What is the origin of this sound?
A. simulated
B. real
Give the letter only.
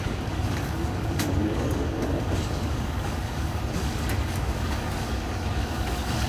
A